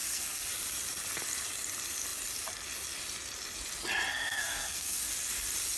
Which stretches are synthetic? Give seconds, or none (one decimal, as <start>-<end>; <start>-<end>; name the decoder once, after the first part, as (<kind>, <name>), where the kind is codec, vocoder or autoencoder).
0.0-0.5 (codec, SNAC); 4.1-5.0